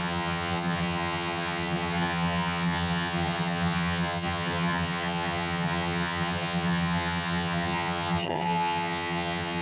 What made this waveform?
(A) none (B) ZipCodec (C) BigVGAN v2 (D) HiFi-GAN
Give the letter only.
D